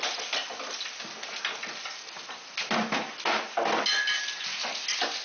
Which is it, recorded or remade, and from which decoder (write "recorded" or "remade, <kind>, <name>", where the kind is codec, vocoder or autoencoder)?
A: recorded